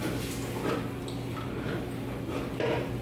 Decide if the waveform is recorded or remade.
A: recorded